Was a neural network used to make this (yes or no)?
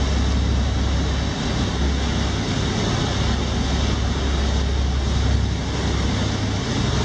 no